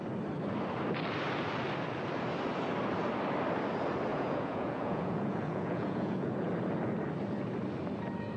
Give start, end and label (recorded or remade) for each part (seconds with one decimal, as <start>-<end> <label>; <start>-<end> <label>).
0.0-4.1 recorded; 4.1-6.3 remade; 6.3-8.4 recorded